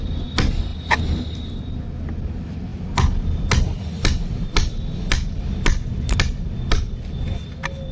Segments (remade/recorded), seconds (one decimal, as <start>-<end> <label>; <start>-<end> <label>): 0.0-7.9 recorded